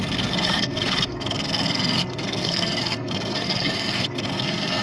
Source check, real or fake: fake